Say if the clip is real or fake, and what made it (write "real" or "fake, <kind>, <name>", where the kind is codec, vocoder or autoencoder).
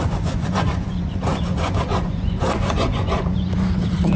fake, vocoder, Vocos